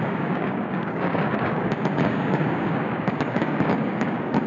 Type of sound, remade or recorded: remade